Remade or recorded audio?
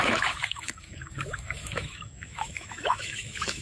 remade